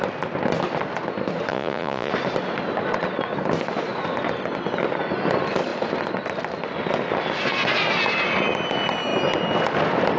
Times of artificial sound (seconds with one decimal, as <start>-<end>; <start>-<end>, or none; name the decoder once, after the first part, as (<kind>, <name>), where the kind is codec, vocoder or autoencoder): 1.5-2.1 (vocoder, Vocos)